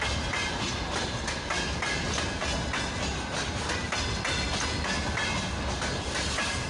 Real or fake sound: real